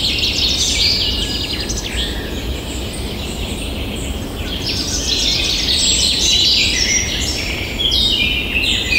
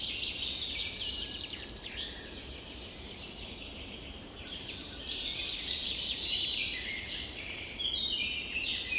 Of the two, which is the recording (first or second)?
first